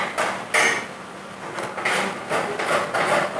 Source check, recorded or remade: recorded